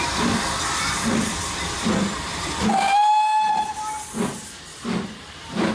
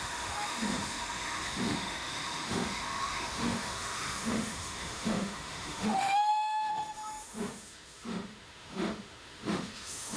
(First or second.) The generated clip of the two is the second